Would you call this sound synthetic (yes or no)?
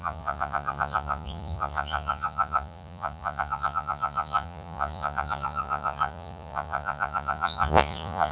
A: yes